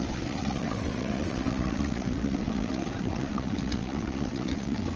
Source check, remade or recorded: remade